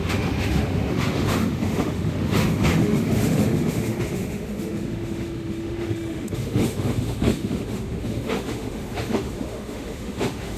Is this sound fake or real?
fake